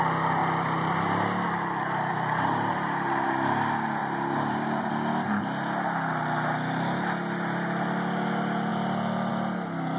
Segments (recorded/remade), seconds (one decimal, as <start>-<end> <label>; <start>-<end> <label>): 0.0-0.4 recorded; 0.4-3.3 remade; 3.3-4.0 recorded; 4.0-4.9 remade; 4.9-10.0 recorded